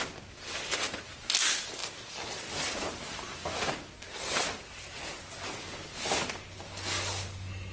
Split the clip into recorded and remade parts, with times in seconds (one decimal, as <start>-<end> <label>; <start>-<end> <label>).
0.0-7.7 recorded